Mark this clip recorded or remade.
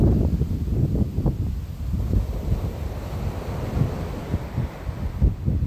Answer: recorded